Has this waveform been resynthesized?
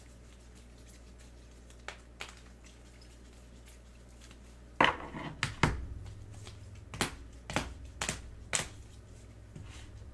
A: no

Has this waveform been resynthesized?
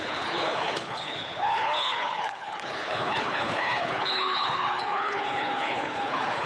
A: yes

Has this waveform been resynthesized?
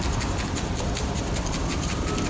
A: yes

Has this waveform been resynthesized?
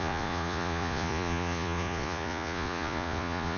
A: yes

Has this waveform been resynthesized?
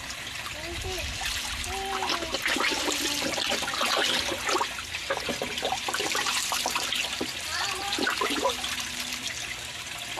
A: no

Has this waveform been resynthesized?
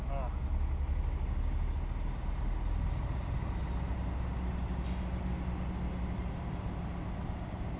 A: no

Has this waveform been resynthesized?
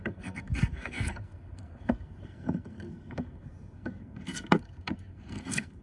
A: yes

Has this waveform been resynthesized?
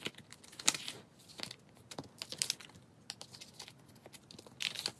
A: no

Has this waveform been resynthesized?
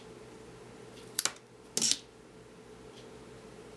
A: no